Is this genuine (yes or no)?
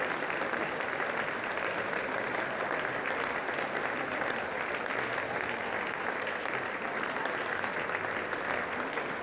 yes